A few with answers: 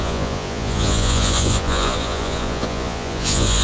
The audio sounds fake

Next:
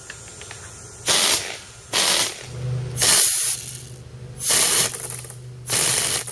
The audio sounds real